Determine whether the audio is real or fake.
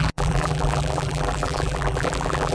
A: fake